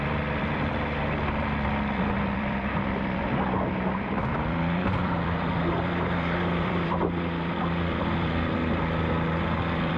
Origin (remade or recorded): remade